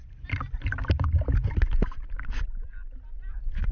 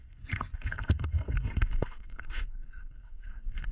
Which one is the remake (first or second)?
second